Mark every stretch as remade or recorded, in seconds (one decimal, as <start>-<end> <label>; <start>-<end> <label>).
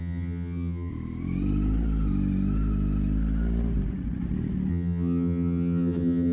0.0-0.9 remade; 0.9-4.7 recorded; 4.7-6.3 remade